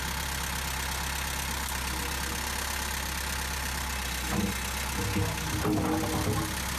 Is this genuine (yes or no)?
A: yes